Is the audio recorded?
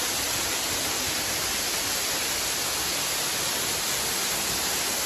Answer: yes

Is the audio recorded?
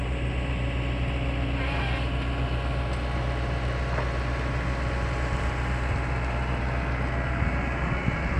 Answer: yes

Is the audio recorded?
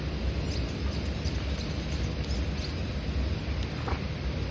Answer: yes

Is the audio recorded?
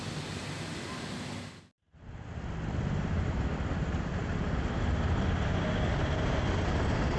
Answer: yes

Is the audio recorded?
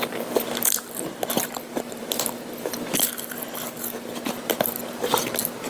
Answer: no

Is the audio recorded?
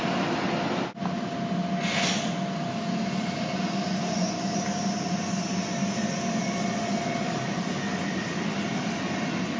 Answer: yes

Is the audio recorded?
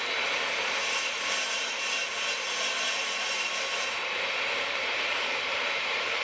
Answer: no